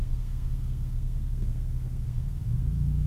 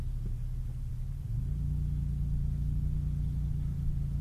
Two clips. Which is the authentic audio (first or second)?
second